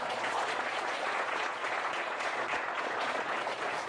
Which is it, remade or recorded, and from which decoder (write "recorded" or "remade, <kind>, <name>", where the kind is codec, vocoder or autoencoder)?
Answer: remade, vocoder, Vocos